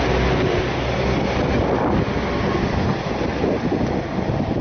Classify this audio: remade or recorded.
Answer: recorded